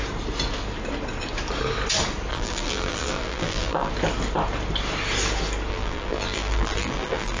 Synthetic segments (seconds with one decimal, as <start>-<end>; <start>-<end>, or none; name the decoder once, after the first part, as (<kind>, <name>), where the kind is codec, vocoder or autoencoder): 2.3-3.9 (vocoder, BigVGAN v2); 5.7-7.4